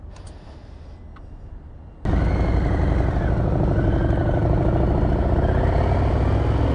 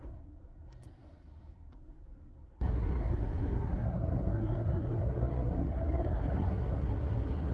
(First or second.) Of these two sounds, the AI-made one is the second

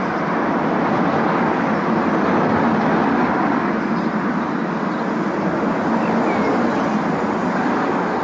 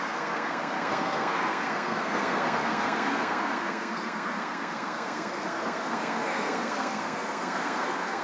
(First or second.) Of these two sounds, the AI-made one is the second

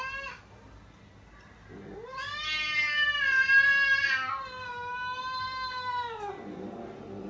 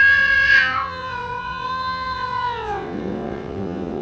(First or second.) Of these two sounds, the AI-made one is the second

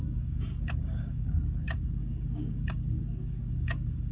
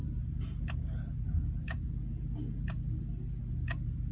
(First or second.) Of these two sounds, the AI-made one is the first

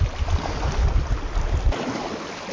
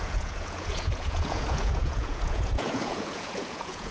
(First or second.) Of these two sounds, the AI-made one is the second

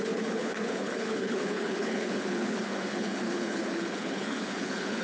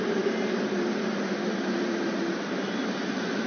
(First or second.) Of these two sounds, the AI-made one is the first